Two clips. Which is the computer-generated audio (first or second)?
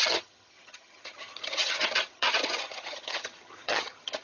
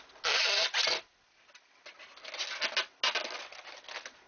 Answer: first